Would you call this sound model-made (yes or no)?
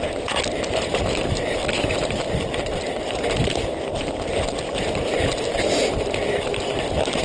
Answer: no